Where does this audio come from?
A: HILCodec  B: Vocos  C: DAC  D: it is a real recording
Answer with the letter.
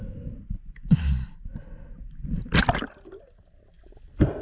D